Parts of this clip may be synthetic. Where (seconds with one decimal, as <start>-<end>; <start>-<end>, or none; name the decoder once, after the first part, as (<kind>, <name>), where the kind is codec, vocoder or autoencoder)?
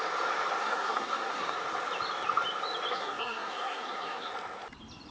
0.6-1.5 (codec, SNAC); 2.9-4.3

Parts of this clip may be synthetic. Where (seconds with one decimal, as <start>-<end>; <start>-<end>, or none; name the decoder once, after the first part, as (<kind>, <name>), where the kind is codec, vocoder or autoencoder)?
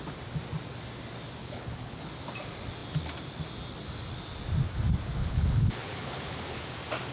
1.4-2.1 (codec, HILCodec); 5.2-6.6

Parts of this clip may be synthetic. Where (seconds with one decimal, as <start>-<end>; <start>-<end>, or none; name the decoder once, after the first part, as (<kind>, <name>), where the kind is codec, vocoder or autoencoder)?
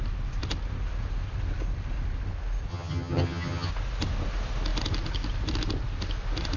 2.7-3.7 (vocoder, HiFi-GAN)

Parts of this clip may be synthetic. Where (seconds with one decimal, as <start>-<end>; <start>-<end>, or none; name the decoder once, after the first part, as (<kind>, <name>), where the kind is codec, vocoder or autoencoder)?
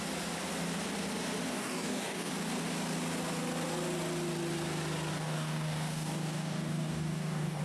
1.5-2.3 (codec, DAC); 5.1-7.6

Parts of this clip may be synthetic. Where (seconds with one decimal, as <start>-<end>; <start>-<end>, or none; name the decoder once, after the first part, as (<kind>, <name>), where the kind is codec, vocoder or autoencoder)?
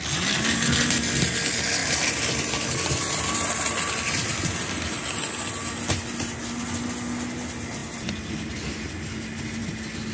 1.8-5.5 (vocoder, BigVGAN v2)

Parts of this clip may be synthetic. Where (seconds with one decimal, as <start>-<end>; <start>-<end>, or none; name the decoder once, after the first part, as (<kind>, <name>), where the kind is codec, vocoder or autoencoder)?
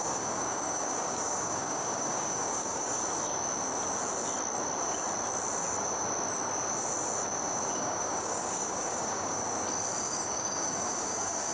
0.0-3.0 (codec, DAC); 7.7-9.4; 10.0-11.5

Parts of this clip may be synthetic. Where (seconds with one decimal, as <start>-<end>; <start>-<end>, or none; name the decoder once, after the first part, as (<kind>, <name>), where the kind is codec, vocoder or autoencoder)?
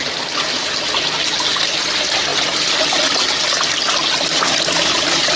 none